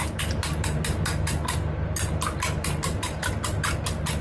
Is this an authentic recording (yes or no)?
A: yes